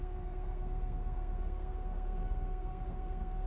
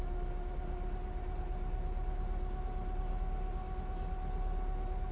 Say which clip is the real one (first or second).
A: second